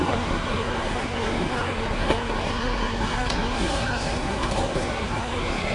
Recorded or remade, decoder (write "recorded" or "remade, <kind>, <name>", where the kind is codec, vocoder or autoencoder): remade, codec, SNAC